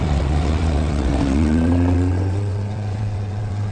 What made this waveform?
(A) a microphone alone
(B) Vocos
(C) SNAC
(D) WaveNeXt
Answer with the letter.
D